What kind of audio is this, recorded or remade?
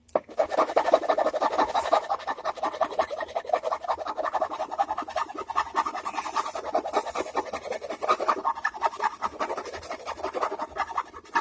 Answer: recorded